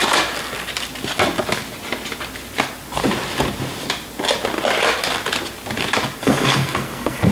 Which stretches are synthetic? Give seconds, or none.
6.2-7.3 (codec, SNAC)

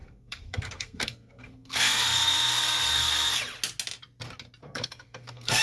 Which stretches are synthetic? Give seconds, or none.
0.0-3.4 (codec, SNAC); 4.6-5.6

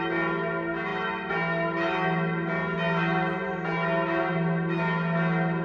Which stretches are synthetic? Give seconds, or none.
none

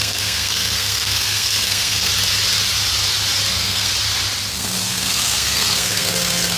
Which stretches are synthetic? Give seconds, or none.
0.0-2.1 (codec, SNAC); 3.5-3.9; 4.5-6.6

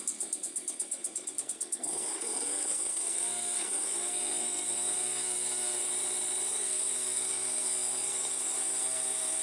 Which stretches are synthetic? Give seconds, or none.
0.0-5.9 (codec, SNAC); 6.5-9.4